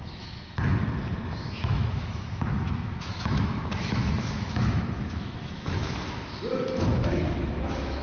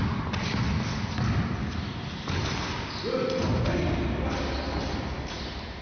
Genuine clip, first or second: second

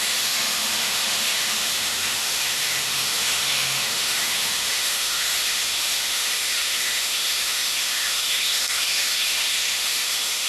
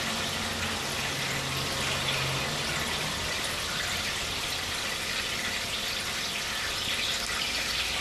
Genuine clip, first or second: second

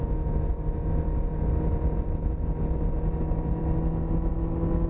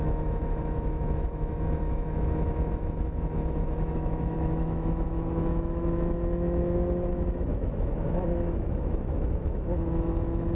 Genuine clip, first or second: first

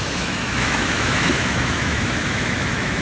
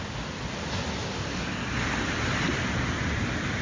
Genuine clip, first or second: second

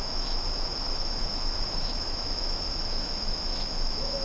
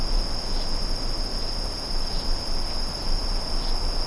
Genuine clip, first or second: second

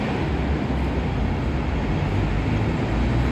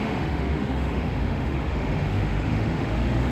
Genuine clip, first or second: first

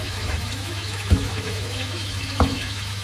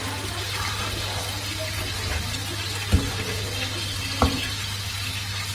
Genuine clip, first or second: second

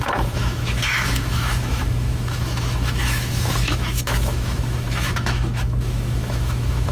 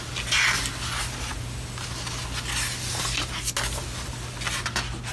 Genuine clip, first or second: second